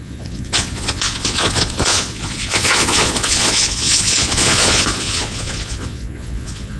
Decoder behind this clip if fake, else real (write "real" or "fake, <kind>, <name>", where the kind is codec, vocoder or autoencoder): fake, vocoder, Vocos